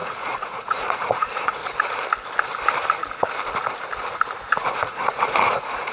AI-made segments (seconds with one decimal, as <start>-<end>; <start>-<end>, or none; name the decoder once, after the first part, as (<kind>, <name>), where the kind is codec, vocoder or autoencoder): 0.0-1.6 (vocoder, Vocos); 4.8-5.9